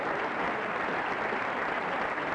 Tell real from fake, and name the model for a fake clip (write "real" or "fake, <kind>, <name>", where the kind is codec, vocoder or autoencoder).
real